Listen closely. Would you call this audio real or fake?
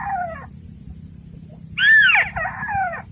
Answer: real